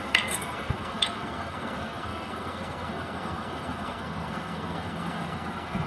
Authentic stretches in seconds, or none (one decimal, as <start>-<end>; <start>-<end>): none